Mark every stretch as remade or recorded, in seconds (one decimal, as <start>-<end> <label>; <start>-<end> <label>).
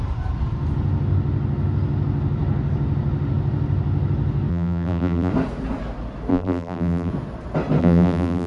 0.0-4.5 recorded; 4.5-5.3 remade; 5.3-6.3 recorded; 6.3-7.1 remade; 7.1-7.8 recorded; 7.8-8.5 remade